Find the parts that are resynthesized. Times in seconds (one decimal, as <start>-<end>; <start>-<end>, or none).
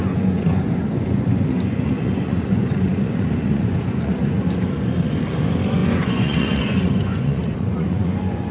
0.0-8.5